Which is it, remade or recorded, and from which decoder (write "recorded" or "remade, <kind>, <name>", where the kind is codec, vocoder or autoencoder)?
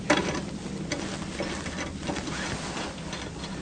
recorded